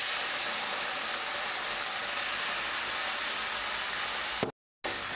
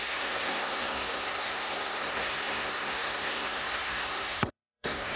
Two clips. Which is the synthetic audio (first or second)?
second